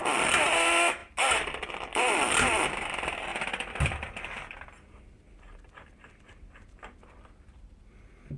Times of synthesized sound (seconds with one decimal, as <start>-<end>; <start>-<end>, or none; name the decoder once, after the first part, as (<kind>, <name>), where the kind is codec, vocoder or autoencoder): none